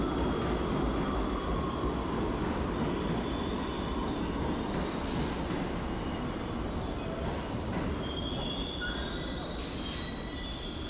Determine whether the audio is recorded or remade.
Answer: recorded